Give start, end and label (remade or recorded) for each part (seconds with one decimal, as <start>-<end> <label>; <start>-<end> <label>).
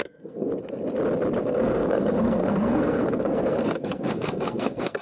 0.0-0.5 remade; 0.5-1.4 recorded; 1.4-5.0 remade